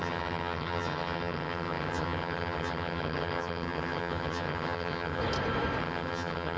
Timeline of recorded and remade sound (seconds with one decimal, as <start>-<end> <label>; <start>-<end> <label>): 0.0-5.2 remade; 5.2-5.8 recorded; 5.8-6.6 remade